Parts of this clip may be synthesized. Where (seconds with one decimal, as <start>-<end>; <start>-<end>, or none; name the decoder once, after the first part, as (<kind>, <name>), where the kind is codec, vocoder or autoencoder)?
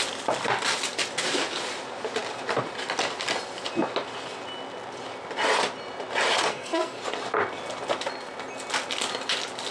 6.5-7.0 (codec, SNAC)